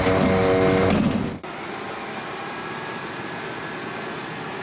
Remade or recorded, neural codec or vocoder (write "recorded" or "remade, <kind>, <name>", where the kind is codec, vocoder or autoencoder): recorded